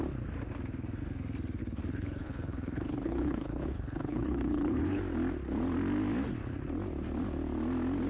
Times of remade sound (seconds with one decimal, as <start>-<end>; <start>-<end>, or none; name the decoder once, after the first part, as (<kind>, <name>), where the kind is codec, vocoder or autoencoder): 1.6-5.0 (codec, HILCodec)